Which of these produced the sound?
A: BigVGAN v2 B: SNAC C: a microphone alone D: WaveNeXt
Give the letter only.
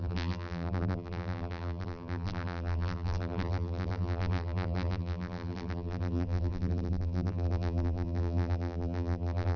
A